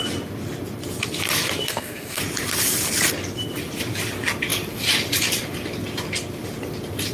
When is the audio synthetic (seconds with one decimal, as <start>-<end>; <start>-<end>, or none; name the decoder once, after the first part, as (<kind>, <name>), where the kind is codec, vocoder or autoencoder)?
1.7-2.2 (codec, SNAC)